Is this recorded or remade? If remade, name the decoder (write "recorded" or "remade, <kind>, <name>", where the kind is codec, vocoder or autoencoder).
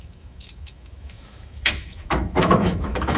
remade, autoencoder, DAC-VAE